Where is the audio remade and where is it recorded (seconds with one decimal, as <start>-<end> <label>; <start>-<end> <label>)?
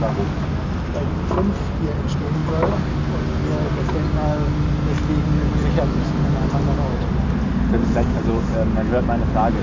0.0-9.6 recorded